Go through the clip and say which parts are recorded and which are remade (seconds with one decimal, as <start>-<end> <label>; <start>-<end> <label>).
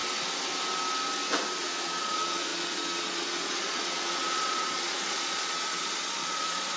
0.0-1.6 recorded; 1.6-6.8 remade